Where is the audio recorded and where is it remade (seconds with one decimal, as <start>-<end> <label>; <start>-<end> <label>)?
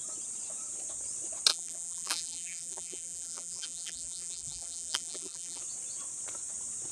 0.0-1.5 recorded; 1.5-5.6 remade; 5.6-6.9 recorded